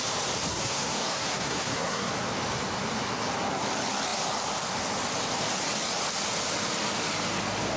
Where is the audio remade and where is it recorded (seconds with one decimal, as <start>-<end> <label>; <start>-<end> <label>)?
0.0-0.5 recorded; 0.5-2.1 remade; 2.1-7.8 recorded